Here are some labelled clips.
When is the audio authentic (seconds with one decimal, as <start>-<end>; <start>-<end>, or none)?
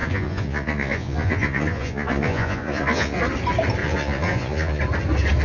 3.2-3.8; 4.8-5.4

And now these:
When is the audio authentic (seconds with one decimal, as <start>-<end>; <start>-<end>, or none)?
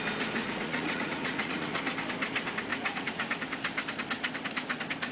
0.0-0.4; 1.8-2.7; 3.3-5.1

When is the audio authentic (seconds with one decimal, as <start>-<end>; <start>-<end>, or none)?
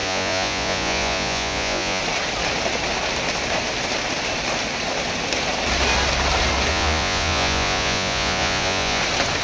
2.0-6.7; 9.0-9.4